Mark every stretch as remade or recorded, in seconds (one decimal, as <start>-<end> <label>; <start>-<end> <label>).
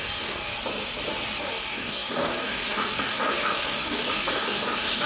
0.0-0.5 remade; 0.5-1.4 recorded; 1.4-5.1 remade